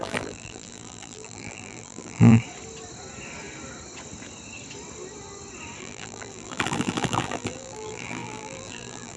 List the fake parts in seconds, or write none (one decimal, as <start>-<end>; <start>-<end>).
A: 0.0-2.4; 5.8-9.2